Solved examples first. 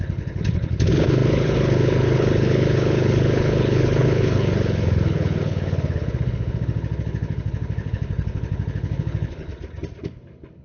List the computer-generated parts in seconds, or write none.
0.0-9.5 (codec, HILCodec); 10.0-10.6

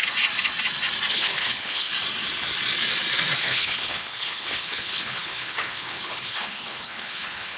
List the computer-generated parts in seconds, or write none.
1.1-1.9 (codec, HILCodec); 3.4-7.6

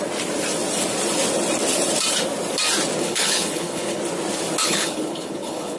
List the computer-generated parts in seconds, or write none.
3.0-4.0 (codec, HILCodec); 4.6-5.8

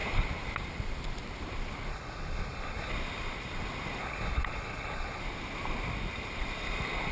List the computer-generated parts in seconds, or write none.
1.9-2.9 (codec, HILCodec); 4.0-5.2